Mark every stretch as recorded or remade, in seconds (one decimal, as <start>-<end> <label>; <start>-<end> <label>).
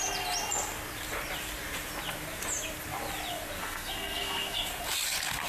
0.0-3.6 recorded; 3.6-4.7 remade; 4.7-5.5 recorded